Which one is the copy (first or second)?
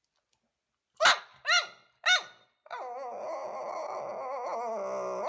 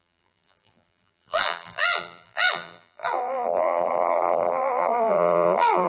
second